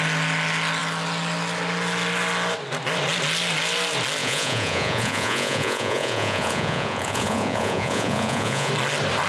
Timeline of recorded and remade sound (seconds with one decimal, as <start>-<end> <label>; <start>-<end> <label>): 0.0-4.2 recorded; 4.2-8.7 remade; 8.7-9.3 recorded